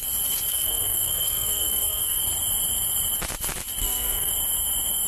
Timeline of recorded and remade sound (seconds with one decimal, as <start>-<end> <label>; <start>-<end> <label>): 0.0-0.5 recorded; 0.5-2.2 remade; 2.2-3.8 recorded; 3.8-4.3 remade; 4.3-5.1 recorded